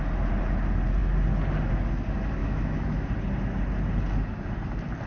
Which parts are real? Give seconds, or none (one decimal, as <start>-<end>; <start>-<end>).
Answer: 0.0-2.4; 3.1-5.1